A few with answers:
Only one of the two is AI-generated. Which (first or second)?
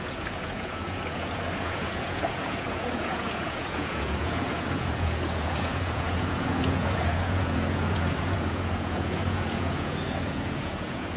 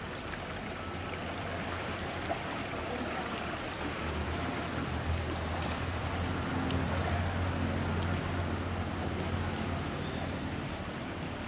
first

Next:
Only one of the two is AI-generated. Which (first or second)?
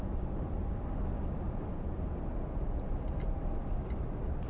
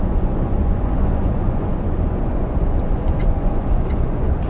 second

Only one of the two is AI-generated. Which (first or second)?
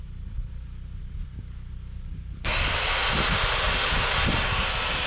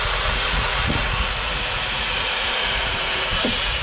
second